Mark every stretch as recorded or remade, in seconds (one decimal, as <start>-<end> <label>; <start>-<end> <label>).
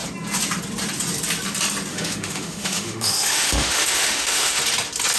0.0-1.9 recorded; 1.9-4.6 remade; 4.6-5.2 recorded